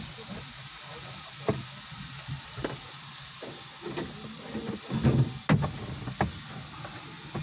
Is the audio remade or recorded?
recorded